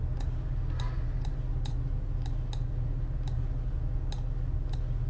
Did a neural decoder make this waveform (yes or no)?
no